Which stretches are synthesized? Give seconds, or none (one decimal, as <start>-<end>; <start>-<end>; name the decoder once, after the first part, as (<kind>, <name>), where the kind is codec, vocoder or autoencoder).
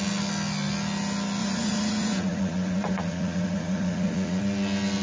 1.4-4.4 (vocoder, Vocos)